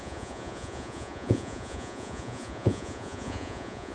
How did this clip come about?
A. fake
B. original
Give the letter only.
A